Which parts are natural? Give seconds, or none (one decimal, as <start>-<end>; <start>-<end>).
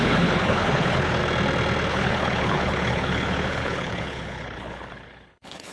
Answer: 1.2-1.9